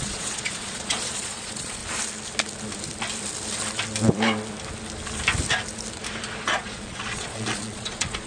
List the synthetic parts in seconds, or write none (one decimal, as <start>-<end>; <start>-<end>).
0.0-1.8; 6.4-8.3